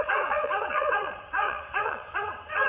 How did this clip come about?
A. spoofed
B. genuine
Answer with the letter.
A